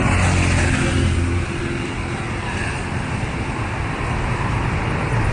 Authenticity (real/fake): real